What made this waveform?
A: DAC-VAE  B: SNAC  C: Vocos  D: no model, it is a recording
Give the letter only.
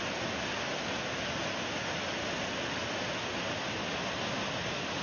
D